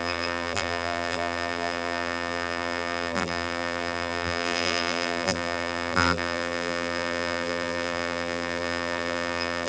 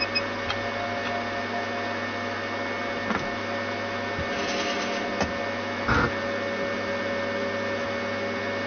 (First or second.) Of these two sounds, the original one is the second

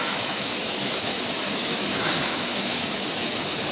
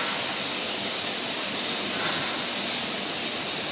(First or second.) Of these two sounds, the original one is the second